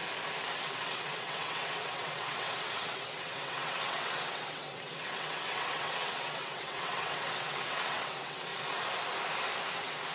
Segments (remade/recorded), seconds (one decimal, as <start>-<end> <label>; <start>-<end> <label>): 0.0-0.5 recorded; 0.5-8.5 remade; 8.5-9.7 recorded; 9.7-10.1 remade